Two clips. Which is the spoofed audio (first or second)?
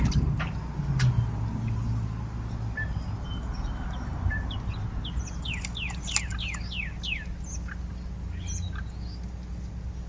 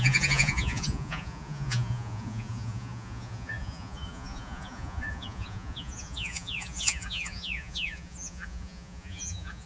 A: second